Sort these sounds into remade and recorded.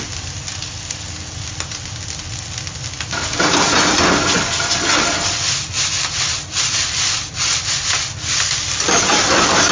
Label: recorded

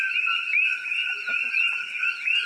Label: recorded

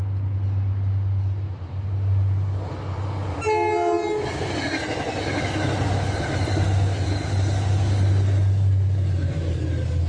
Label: recorded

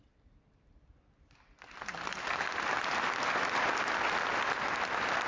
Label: recorded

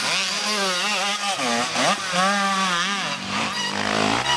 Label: recorded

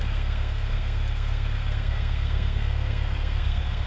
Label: remade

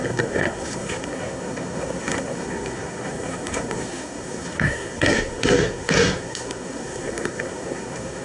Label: remade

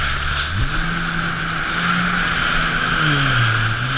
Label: recorded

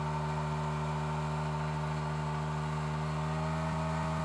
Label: recorded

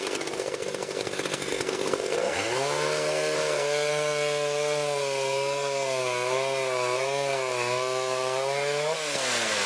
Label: remade